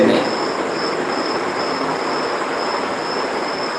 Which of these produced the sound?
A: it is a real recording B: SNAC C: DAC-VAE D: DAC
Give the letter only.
A